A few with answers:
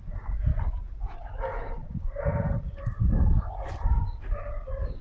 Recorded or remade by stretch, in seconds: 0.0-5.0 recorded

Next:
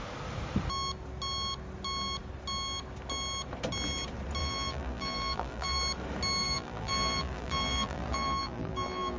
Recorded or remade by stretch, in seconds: 0.0-4.4 recorded; 4.4-5.8 remade; 5.8-6.4 recorded; 6.4-9.2 remade

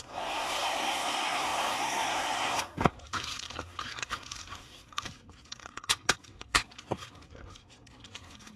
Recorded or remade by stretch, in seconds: 0.0-8.6 remade

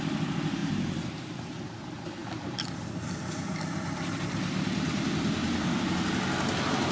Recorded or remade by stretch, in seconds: 0.0-6.9 recorded